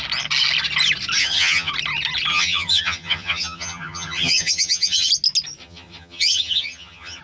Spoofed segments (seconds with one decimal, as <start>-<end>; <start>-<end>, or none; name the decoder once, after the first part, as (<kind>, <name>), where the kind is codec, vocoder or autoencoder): 1.2-1.7 (vocoder, HiFi-GAN); 2.3-5.1; 5.6-7.2